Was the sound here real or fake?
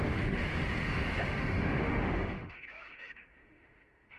fake